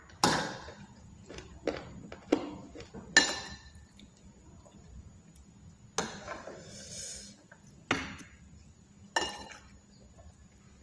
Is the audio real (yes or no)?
yes